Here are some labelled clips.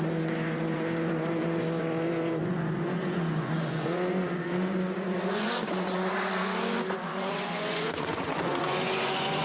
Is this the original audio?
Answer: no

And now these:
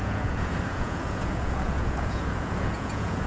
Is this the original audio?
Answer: no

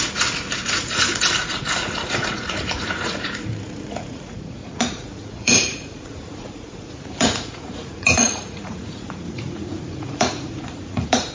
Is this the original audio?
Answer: no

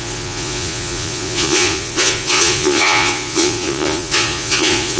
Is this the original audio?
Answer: no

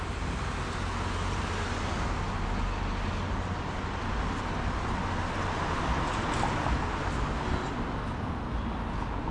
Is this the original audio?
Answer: yes